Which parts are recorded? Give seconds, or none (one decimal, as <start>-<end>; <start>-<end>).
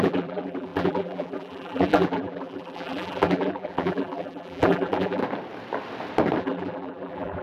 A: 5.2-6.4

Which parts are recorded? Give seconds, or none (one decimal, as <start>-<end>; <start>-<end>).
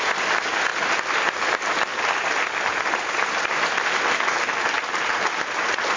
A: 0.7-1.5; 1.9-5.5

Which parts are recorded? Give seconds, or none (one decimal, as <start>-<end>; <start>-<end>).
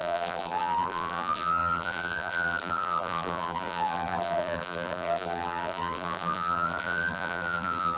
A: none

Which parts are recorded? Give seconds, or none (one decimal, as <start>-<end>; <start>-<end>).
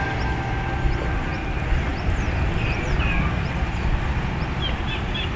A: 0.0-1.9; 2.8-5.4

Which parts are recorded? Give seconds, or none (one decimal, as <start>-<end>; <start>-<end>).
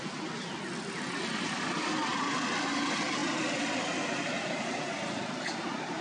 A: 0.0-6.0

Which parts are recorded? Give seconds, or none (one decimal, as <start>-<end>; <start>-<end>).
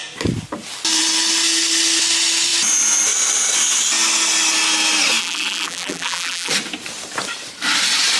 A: 0.0-5.2; 6.5-8.2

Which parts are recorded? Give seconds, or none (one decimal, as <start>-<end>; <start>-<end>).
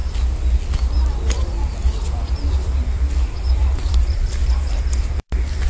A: 0.0-1.8; 5.2-5.7